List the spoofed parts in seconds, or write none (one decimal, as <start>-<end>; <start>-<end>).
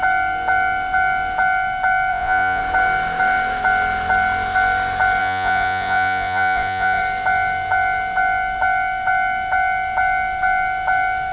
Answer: 2.1-2.6; 5.2-7.0